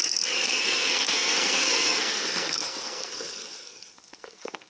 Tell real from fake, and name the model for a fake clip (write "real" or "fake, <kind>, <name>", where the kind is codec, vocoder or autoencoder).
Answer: fake, codec, SNAC